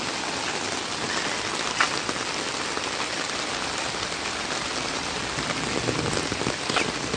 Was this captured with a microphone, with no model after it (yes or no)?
yes